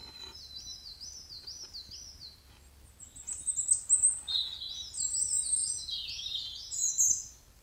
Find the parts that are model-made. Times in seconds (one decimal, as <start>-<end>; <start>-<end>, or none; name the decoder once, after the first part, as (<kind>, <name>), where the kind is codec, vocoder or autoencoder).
5.6-6.9 (vocoder, Vocos)